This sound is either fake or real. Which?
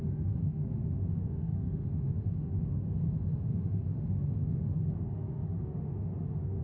fake